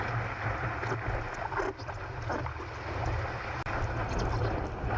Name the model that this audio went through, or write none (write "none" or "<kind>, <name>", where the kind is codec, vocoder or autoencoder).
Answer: none